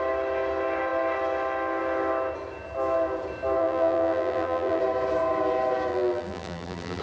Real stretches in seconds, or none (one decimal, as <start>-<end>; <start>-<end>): 0.0-3.6; 4.8-5.9